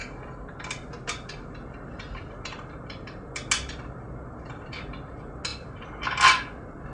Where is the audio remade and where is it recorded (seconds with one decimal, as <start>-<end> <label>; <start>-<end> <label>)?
0.0-6.9 recorded

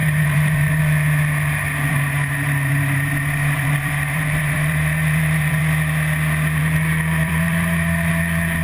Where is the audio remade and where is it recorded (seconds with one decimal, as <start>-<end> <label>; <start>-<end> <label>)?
0.0-0.8 remade; 0.8-1.9 recorded; 1.9-5.6 remade; 5.6-6.6 recorded; 6.6-8.1 remade; 8.1-8.6 recorded

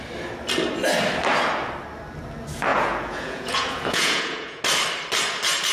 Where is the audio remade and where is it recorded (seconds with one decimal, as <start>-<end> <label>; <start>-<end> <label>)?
0.0-2.7 recorded; 2.7-4.6 remade; 4.6-5.7 recorded

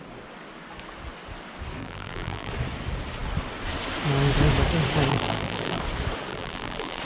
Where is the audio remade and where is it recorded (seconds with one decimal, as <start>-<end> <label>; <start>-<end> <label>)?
0.0-1.8 recorded; 1.8-2.5 remade; 2.5-5.1 recorded; 5.1-5.8 remade; 5.8-6.3 recorded; 6.3-7.0 remade